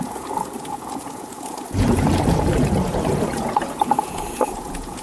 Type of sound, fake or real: fake